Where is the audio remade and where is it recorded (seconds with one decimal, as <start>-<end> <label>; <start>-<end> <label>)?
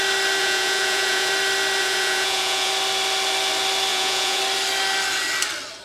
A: 0.0-0.4 recorded; 0.4-1.3 remade; 1.3-1.8 recorded; 1.8-2.7 remade; 2.7-3.9 recorded; 3.9-4.4 remade; 4.4-5.8 recorded